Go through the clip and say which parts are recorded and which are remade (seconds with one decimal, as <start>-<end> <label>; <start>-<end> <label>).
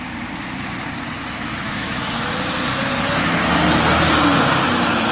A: 0.0-1.5 recorded; 1.5-2.2 remade; 2.2-5.1 recorded